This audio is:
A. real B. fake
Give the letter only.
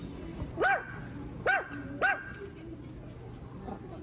A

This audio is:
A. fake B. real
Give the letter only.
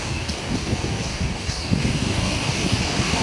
A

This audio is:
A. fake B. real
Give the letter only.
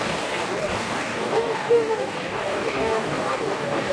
A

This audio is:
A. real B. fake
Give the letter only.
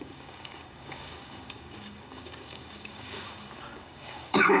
B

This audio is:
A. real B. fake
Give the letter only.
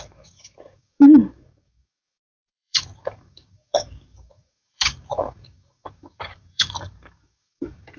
B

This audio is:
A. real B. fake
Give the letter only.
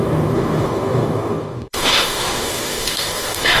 B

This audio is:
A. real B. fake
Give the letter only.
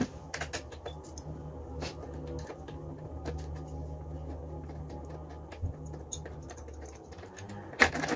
A